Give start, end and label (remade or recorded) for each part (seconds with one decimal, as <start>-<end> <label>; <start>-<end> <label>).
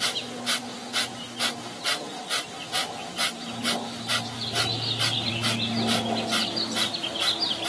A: 0.0-0.7 recorded; 0.7-5.3 remade; 5.3-7.7 recorded